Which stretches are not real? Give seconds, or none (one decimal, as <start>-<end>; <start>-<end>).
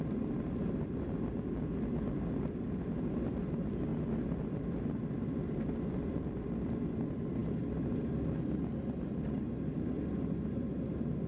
none